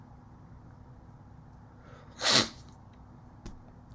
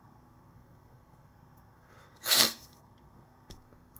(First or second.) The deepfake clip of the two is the second